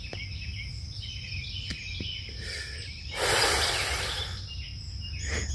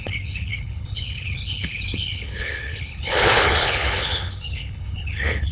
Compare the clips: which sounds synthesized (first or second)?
second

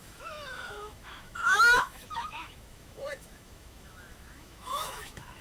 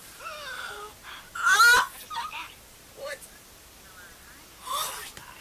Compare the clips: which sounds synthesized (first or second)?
first